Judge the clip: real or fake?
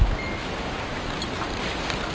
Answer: real